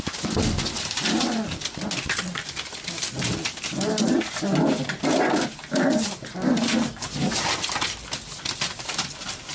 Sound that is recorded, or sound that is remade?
recorded